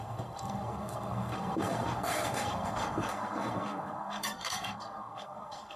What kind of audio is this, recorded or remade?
remade